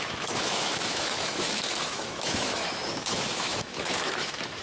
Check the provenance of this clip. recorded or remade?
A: remade